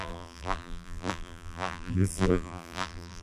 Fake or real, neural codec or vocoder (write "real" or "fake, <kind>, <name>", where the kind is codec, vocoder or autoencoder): fake, vocoder, BigVGAN v2